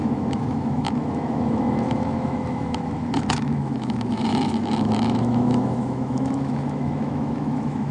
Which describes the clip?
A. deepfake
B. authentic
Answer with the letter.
A